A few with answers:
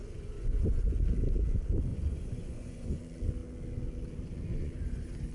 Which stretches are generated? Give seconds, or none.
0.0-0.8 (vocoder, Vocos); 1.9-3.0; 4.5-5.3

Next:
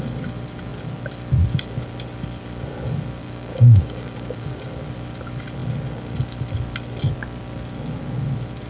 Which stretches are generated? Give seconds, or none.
3.2-4.6 (codec, DAC)

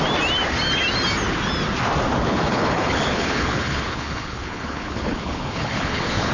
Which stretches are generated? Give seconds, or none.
2.2-6.3 (codec, HILCodec)

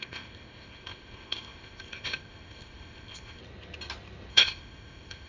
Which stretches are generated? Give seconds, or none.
0.0-3.4 (codec, ZipCodec); 4.3-5.3